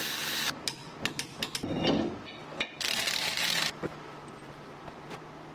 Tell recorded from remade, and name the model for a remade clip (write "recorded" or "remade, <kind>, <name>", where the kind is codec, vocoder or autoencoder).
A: recorded